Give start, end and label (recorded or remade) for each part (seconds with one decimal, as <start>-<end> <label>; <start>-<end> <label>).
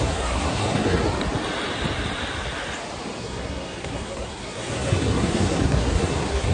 0.0-1.0 remade; 1.0-3.2 recorded; 3.2-6.5 remade